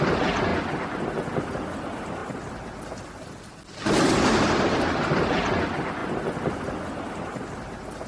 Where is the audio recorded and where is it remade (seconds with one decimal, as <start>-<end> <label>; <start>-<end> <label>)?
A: 0.0-8.1 recorded